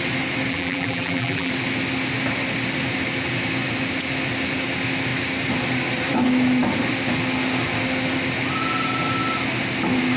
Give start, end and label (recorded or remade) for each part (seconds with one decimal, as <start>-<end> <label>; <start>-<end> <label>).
0.0-0.5 recorded; 0.5-1.5 remade; 1.5-10.2 recorded